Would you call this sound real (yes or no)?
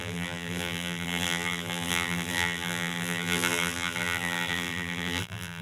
no